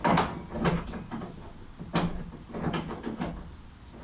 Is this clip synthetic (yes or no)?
no